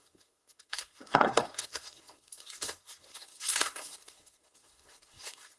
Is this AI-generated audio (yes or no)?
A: yes